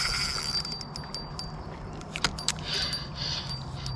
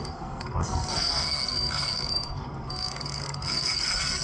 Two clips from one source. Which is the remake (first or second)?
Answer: second